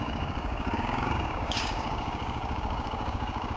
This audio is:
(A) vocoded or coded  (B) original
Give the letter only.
A